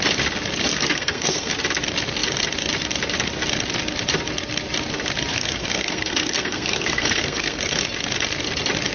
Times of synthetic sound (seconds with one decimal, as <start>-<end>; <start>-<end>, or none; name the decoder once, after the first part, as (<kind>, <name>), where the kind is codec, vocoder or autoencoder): 0.7-1.5 (codec, SNAC); 5.3-7.8